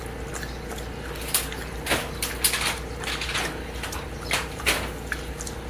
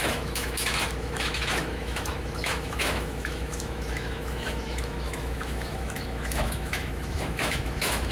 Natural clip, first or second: first